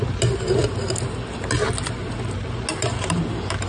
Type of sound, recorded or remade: recorded